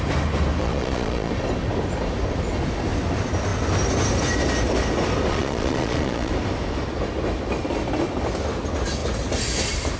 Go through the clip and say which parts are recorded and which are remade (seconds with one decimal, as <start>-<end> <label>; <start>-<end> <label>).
0.0-0.6 recorded; 0.6-1.3 remade; 1.3-5.3 recorded; 5.3-6.3 remade; 6.3-10.0 recorded